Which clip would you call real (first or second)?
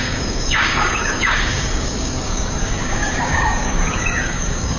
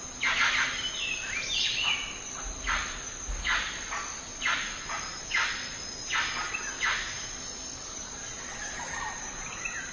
second